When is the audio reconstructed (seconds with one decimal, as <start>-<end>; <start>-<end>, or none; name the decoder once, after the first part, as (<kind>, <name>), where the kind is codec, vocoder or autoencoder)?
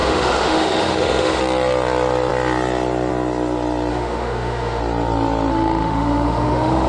0.0-1.4 (autoencoder, DAC-VAE); 3.9-4.8; 5.5-6.9